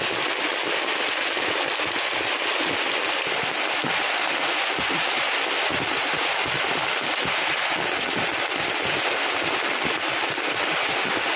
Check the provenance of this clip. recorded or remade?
recorded